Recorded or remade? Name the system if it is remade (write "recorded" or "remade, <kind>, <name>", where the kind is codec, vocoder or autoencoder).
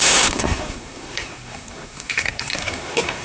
remade, codec, SNAC